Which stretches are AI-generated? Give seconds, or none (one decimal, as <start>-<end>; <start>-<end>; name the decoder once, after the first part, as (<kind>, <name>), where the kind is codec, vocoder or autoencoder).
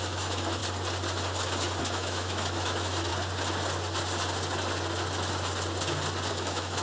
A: 0.0-0.6 (autoencoder, DAC-VAE); 1.8-3.1; 6.3-6.8